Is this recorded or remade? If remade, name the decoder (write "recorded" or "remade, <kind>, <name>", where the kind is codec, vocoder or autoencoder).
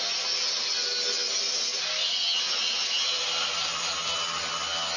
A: recorded